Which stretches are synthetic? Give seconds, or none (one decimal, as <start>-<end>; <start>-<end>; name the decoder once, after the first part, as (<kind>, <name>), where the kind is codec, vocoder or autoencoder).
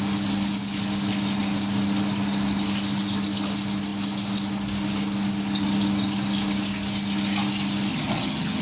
7.9-8.6 (vocoder, HiFi-GAN)